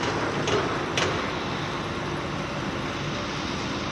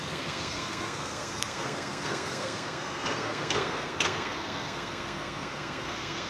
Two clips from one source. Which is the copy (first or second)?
second